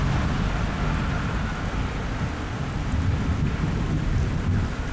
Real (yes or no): yes